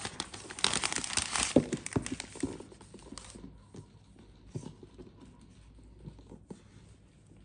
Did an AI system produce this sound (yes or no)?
no